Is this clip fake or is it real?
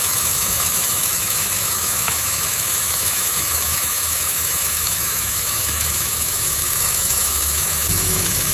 fake